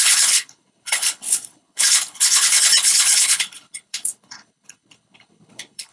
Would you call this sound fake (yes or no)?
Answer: yes